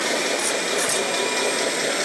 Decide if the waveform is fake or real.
real